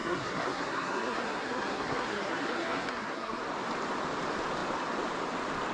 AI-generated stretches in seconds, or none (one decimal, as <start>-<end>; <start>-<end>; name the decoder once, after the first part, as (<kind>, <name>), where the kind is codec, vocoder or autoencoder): 0.0-3.4 (codec, SNAC)